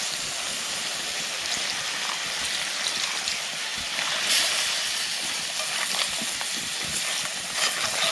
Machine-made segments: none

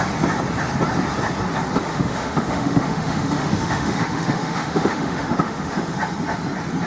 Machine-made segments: 1.9-6.0 (autoencoder, DAC-VAE)

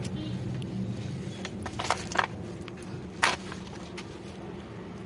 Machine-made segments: none

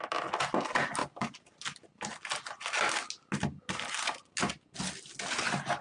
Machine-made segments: none